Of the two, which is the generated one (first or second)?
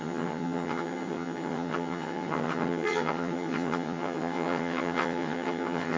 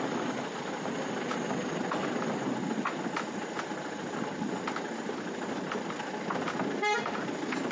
first